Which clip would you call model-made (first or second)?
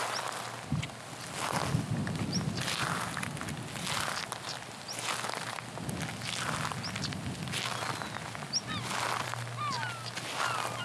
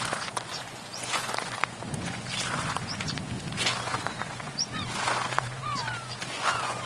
second